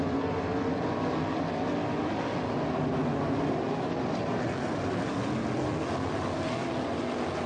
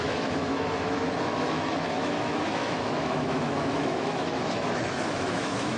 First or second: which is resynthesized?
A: second